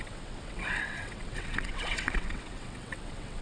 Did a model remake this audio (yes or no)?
yes